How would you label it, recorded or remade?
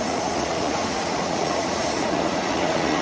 remade